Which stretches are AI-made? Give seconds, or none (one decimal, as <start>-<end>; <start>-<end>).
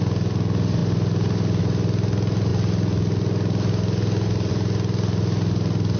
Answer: none